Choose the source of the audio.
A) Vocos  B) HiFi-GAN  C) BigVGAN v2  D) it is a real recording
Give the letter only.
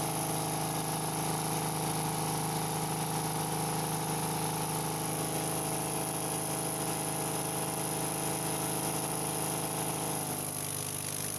D